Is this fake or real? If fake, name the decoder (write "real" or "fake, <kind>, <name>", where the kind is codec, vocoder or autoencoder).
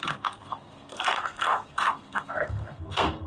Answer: fake, codec, SNAC